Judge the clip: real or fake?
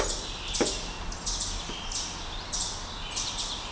real